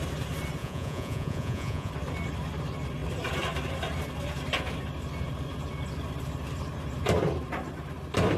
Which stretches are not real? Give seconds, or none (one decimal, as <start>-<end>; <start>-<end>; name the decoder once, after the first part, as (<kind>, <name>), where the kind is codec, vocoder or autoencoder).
0.6-1.9 (vocoder, Vocos)